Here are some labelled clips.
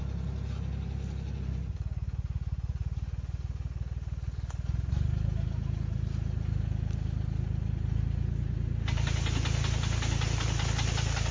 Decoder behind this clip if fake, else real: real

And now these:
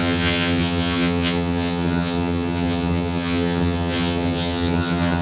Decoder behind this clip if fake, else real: fake, vocoder, HiFi-GAN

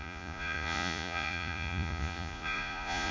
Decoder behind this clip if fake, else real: fake, vocoder, Vocos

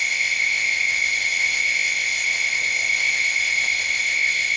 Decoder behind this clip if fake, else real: fake, codec, ZipCodec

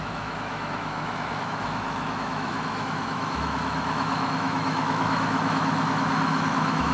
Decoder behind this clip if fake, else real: fake, autoencoder, DAC-VAE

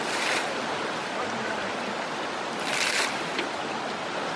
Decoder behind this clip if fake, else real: real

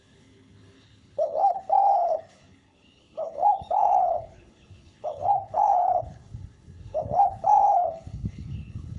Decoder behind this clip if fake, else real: fake, codec, HILCodec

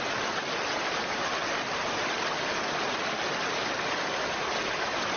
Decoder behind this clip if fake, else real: real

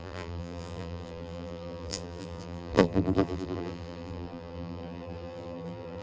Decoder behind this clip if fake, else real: fake, vocoder, BigVGAN v2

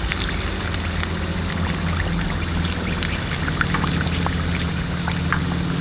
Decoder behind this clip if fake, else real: real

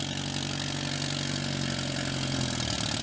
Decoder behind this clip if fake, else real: real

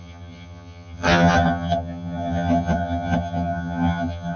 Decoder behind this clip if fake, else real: fake, vocoder, HiFi-GAN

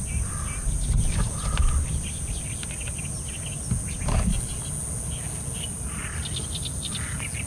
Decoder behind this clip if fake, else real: real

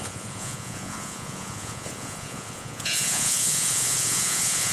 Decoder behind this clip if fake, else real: fake, vocoder, Vocos